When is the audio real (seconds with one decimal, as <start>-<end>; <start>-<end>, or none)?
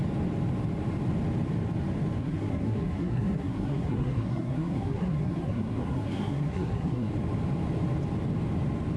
0.0-2.2; 7.1-9.0